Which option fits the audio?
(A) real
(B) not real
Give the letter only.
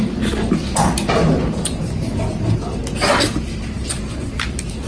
A